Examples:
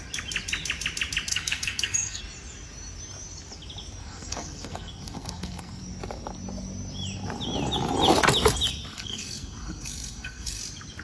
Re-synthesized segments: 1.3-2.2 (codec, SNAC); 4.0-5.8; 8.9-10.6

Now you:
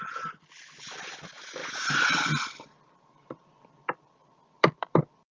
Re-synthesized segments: 0.0-5.3 (vocoder, BigVGAN v2)